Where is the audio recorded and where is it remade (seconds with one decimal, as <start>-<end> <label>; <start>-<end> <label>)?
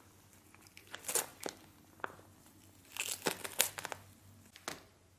0.0-5.2 recorded